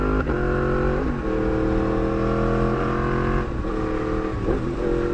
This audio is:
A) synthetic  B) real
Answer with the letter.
B